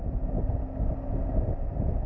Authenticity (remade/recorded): recorded